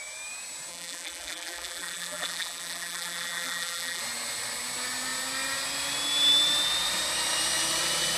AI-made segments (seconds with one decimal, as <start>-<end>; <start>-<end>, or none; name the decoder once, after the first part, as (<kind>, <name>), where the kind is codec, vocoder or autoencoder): 0.7-4.0 (vocoder, BigVGAN v2)